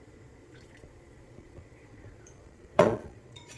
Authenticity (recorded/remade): remade